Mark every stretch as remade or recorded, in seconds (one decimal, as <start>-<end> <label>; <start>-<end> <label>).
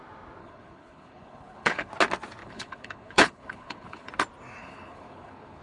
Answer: 0.0-0.4 recorded; 0.4-1.9 remade; 1.9-2.4 recorded; 2.4-4.1 remade; 4.1-4.6 recorded; 4.6-5.6 remade